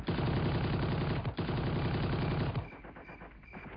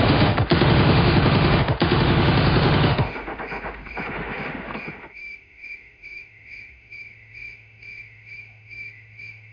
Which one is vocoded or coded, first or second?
second